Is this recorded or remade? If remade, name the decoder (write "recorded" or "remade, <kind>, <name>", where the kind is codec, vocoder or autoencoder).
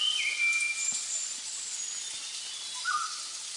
recorded